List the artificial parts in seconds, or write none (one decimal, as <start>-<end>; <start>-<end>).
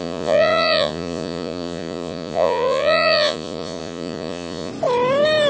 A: 0.0-4.7